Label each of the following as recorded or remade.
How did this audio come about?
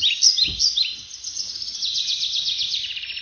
recorded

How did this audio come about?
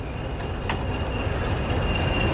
recorded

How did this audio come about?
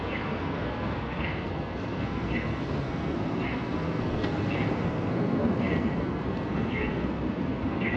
remade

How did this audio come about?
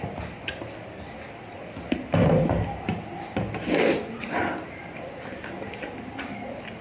recorded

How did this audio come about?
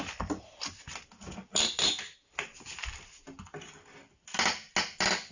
recorded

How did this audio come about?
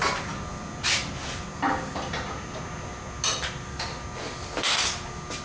recorded